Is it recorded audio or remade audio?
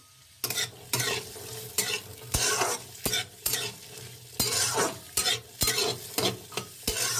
recorded